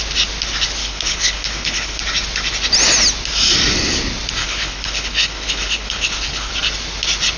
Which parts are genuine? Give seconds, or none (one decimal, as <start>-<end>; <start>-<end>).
0.0-0.8; 2.0-4.4; 6.5-7.4